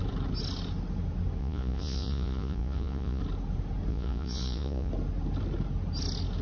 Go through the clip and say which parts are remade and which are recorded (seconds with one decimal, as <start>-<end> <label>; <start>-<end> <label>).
0.0-1.4 recorded; 1.4-3.2 remade; 3.2-3.9 recorded; 3.9-4.9 remade; 4.9-6.4 recorded